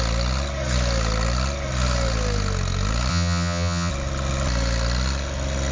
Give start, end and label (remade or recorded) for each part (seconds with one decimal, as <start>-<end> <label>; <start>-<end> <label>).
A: 0.0-3.1 recorded; 3.1-3.9 remade; 3.9-5.7 recorded